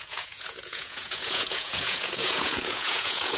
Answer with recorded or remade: remade